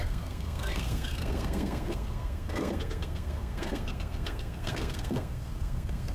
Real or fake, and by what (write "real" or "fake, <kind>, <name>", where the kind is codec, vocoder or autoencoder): fake, codec, SNAC